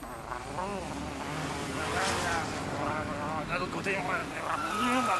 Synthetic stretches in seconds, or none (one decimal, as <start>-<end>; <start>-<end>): 0.7-3.7; 4.2-4.7

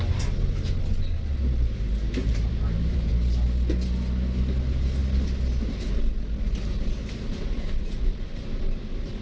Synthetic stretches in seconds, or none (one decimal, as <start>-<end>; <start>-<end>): 2.2-3.1

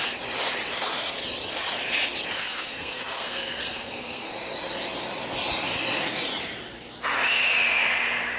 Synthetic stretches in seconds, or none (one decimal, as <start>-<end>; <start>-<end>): 2.4-4.3

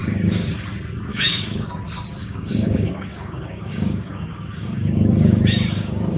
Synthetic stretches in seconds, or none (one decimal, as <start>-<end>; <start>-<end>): 0.0-0.5; 1.1-1.7; 2.2-6.2

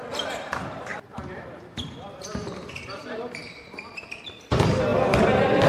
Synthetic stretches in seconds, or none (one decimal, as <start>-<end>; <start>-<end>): 0.9-4.3